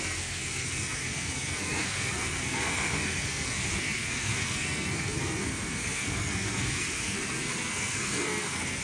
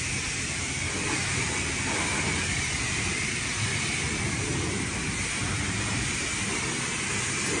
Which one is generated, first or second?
first